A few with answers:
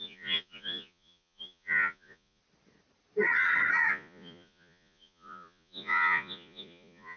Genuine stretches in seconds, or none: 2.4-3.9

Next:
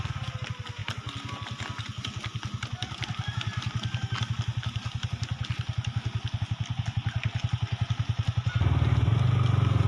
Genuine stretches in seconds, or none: 0.0-9.9

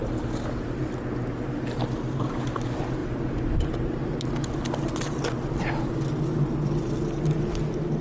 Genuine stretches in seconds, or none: 0.0-8.0

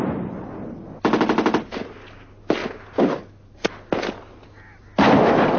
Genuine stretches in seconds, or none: 0.0-5.6